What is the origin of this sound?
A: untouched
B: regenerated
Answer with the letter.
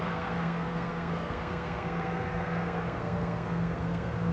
B